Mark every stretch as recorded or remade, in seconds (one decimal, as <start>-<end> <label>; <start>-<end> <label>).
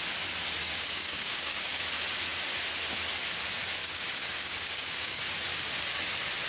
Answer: 0.0-0.6 recorded; 0.6-1.8 remade; 1.8-3.8 recorded; 3.8-5.2 remade; 5.2-6.5 recorded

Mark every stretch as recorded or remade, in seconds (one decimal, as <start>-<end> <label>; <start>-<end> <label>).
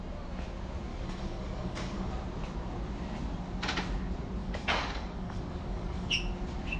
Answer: 0.0-0.9 recorded; 0.9-2.1 remade; 2.1-4.4 recorded; 4.4-6.1 remade; 6.1-6.8 recorded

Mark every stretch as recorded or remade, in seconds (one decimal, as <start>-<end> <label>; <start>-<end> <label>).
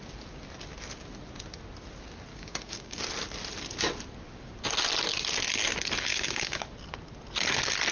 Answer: 0.0-2.3 recorded; 2.3-3.0 remade; 3.0-6.1 recorded; 6.1-6.6 remade; 6.6-7.9 recorded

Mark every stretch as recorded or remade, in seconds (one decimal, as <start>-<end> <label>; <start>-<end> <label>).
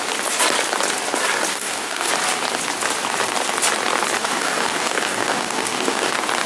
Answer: 0.0-1.5 recorded; 1.5-2.1 remade; 2.1-4.2 recorded; 4.2-6.1 remade; 6.1-6.5 recorded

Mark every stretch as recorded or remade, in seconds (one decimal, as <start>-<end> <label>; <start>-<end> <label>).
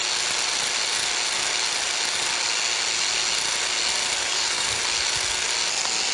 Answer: 0.0-4.2 recorded; 4.2-4.8 remade; 4.8-6.1 recorded